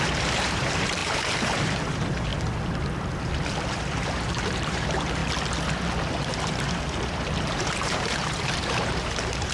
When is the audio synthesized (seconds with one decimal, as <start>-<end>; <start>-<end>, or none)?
0.0-2.3; 3.7-5.2; 6.1-9.5

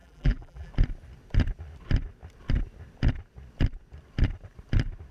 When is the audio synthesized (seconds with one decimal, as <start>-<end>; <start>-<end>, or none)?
0.0-0.7